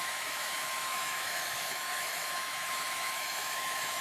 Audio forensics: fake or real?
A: fake